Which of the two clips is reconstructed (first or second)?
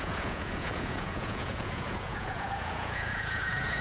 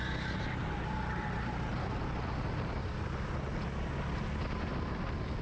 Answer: first